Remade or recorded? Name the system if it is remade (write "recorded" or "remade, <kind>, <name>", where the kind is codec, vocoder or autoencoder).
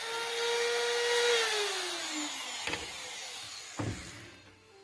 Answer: recorded